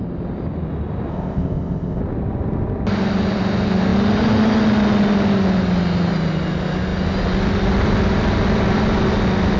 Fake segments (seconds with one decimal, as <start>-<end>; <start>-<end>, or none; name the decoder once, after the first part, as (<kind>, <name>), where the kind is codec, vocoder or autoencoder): 1.1-2.0 (codec, ZipCodec)